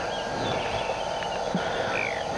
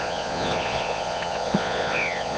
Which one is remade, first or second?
second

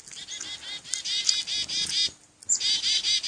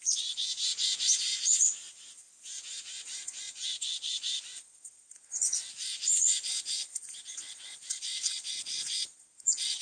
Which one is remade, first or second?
second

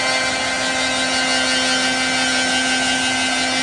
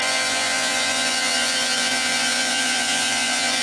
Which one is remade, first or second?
second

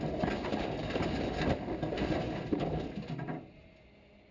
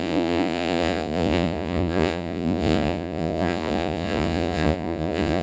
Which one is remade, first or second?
second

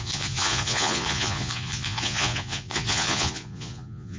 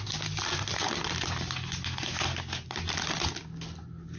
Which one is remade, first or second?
first